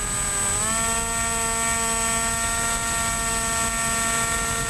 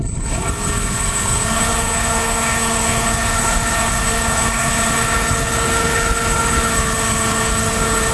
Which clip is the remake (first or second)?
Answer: second